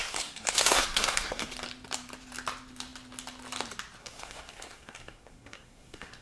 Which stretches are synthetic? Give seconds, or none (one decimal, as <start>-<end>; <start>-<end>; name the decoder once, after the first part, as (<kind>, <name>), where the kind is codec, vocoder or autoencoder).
0.0-1.5 (codec, SNAC); 4.0-6.2